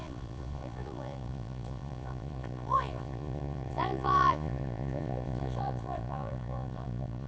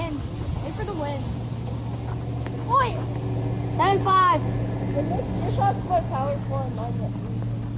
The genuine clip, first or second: second